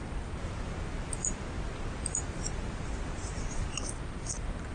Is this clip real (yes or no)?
yes